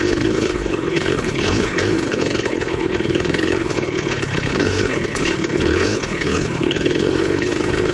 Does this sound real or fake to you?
fake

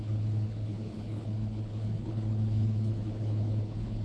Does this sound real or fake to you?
fake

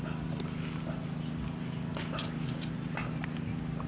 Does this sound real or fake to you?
real